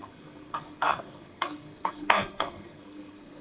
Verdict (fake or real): fake